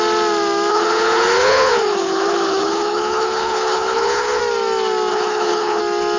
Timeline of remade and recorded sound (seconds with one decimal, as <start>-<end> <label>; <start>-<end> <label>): 0.0-0.7 recorded; 0.7-4.4 remade; 4.4-5.1 recorded; 5.1-5.8 remade; 5.8-6.2 recorded